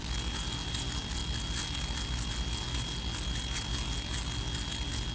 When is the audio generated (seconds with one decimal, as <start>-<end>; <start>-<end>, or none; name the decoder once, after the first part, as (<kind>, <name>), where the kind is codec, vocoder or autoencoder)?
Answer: none